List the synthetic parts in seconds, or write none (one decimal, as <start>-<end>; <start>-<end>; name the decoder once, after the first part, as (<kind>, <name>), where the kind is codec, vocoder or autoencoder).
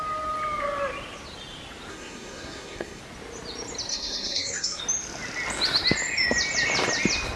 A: 1.9-3.0 (codec, SNAC); 3.9-4.8